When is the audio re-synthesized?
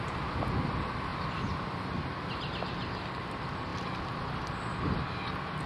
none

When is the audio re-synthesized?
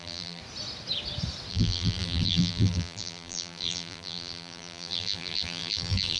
0.0-0.4 (vocoder, BigVGAN v2); 1.5-6.2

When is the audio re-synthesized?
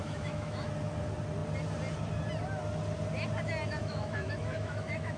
0.0-0.7 (autoencoder, DAC-VAE); 3.8-5.2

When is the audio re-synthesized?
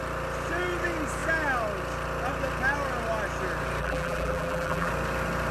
3.8-4.9 (vocoder, BigVGAN v2)